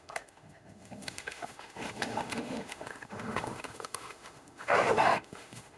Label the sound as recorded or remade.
remade